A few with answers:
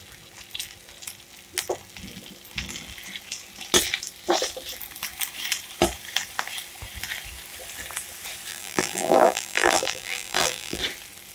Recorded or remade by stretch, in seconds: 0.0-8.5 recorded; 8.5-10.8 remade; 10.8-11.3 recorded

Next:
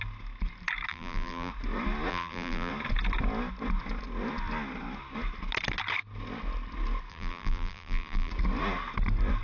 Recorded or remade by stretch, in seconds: 0.0-0.9 recorded; 0.9-1.5 remade; 1.5-2.1 recorded; 2.1-2.7 remade; 2.7-7.1 recorded; 7.1-8.3 remade; 8.3-9.4 recorded

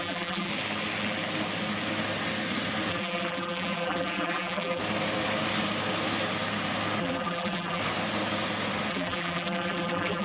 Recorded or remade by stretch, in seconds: 0.0-0.5 remade; 0.5-2.9 recorded; 2.9-4.8 remade; 4.8-7.0 recorded; 7.0-7.8 remade; 7.8-8.9 recorded; 8.9-10.2 remade

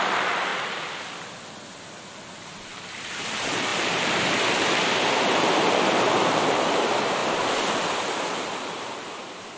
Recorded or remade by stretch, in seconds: 0.0-0.5 remade; 0.5-1.7 recorded; 1.7-7.2 remade; 7.2-7.7 recorded; 7.7-9.6 remade

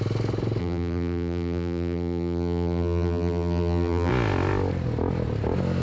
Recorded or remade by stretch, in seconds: 0.0-0.6 recorded; 0.6-4.1 remade; 4.1-5.8 recorded

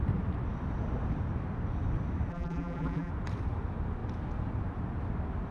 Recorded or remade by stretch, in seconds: 0.0-2.3 recorded; 2.3-3.1 remade; 3.1-5.5 recorded